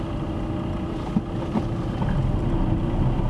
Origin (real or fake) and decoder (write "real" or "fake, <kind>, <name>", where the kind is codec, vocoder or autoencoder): real